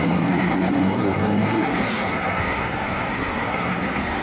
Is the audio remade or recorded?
remade